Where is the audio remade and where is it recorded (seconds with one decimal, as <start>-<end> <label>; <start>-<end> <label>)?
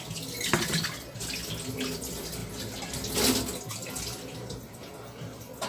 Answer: 0.0-5.7 recorded